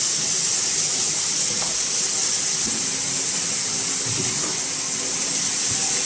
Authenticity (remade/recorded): recorded